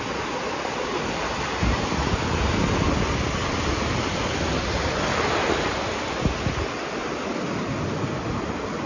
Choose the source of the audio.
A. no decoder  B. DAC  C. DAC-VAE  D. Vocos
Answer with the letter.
A